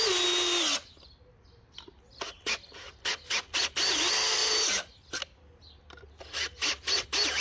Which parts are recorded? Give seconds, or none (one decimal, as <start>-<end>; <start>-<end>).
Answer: 0.0-7.4